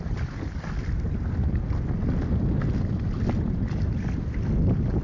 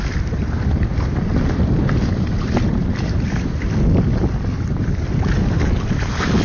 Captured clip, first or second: first